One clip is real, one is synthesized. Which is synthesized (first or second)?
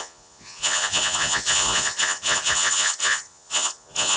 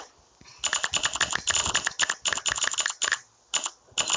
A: first